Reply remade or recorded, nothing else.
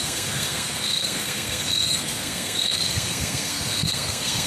remade